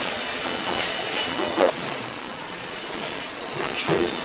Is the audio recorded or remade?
remade